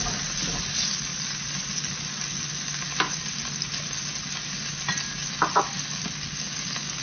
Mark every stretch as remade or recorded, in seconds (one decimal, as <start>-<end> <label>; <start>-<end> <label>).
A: 0.0-7.0 recorded